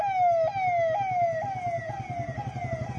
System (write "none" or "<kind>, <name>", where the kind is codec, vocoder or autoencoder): none